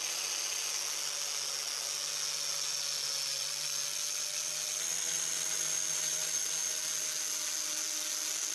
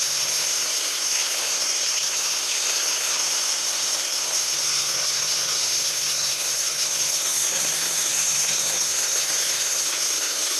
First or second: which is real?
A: first